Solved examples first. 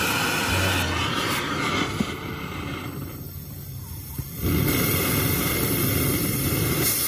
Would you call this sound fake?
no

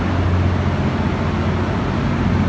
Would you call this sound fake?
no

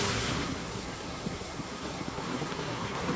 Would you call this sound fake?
yes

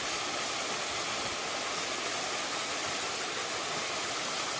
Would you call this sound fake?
no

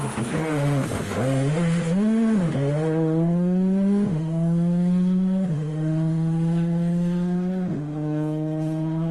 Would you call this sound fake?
yes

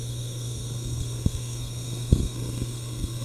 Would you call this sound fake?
yes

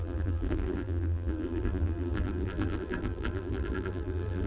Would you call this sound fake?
yes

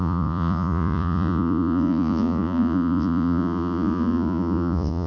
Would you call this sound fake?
yes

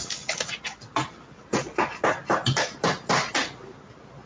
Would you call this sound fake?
no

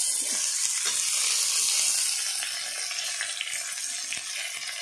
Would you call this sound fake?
no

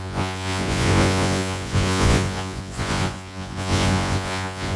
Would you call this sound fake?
yes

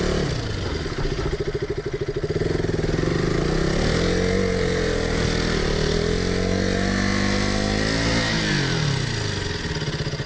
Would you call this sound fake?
no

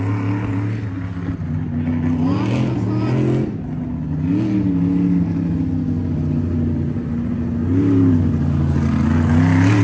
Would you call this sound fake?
no